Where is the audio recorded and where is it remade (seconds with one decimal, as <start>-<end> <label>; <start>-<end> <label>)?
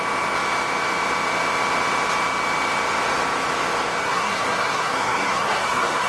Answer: 0.0-4.0 recorded; 4.0-6.1 remade